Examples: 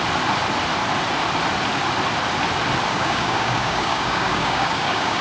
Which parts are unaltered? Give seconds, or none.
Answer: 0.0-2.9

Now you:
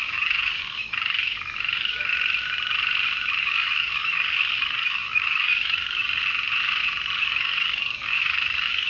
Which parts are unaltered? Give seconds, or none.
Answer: 2.1-3.4; 6.2-7.2

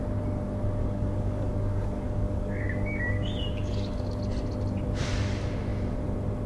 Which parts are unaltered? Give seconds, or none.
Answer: 0.0-0.8; 4.2-6.5